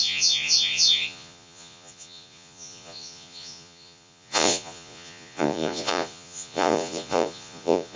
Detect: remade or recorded remade